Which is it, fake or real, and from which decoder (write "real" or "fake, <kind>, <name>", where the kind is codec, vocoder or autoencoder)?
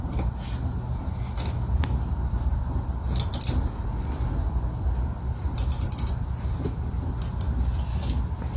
real